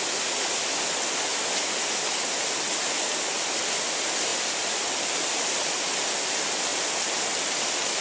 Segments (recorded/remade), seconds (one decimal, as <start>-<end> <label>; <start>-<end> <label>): 0.0-8.0 recorded